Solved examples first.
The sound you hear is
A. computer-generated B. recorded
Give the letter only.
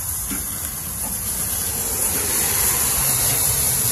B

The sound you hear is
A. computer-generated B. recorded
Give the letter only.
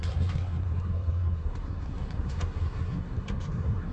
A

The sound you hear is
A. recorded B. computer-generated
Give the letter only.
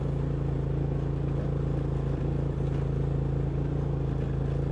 A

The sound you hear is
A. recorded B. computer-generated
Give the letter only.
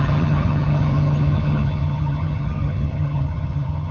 B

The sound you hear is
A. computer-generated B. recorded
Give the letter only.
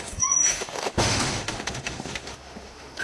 A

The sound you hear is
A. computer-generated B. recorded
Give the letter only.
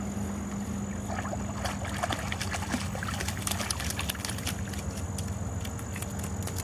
B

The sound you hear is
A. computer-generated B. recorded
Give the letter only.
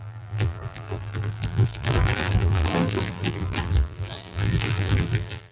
A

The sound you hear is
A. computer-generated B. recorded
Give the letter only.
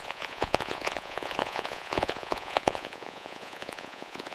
A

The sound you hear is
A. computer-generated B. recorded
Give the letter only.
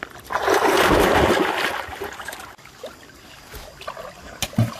B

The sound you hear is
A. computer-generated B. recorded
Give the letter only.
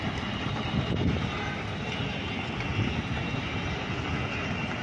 B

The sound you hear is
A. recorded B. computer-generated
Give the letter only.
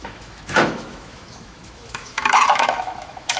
B